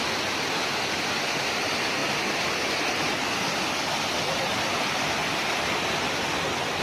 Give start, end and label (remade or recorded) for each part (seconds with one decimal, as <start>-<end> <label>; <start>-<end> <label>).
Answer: 0.0-6.8 recorded